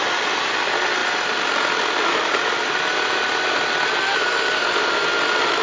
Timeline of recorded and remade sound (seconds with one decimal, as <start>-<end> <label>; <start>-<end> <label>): 0.0-1.0 recorded; 1.0-4.4 remade; 4.4-5.6 recorded